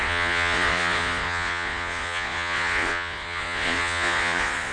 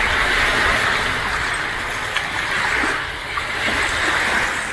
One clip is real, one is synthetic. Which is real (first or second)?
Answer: second